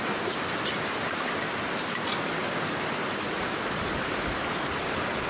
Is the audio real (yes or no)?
no